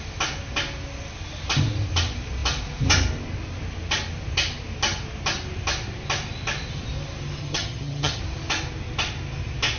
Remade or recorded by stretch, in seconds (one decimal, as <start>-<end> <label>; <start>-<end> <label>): 0.0-7.4 recorded; 7.4-8.2 remade; 8.2-9.8 recorded